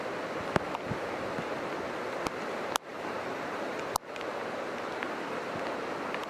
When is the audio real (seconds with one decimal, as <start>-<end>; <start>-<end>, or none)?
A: 0.0-2.9; 3.8-6.3